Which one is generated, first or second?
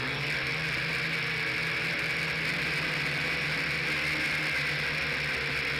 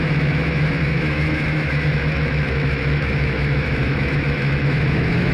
second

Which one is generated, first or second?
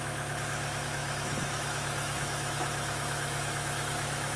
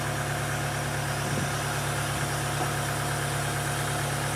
first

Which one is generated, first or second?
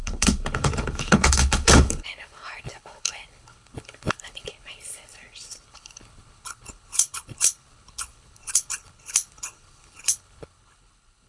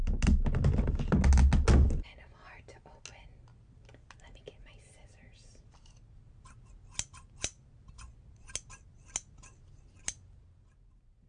first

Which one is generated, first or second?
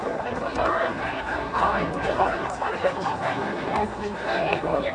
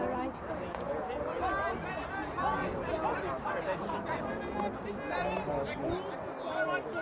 first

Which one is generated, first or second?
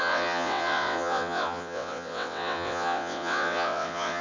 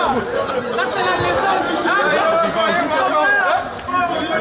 first